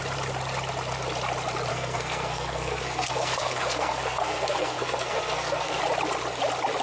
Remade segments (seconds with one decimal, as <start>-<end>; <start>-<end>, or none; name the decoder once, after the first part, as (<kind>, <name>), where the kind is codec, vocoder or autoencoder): 1.7-5.8 (codec, SNAC)